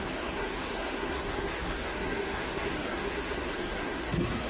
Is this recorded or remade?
remade